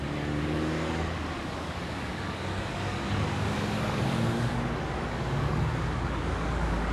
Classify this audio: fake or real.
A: fake